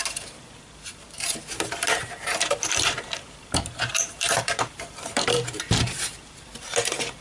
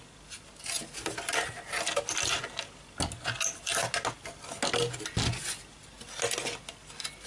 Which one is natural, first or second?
second